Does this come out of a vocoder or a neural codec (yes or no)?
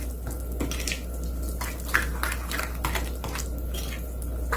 no